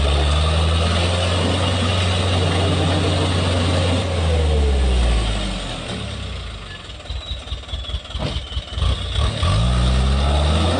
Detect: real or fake real